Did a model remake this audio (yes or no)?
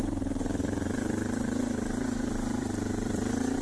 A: yes